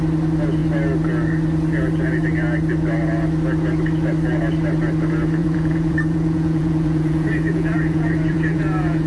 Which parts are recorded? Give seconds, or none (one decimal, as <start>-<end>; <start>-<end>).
0.0-5.4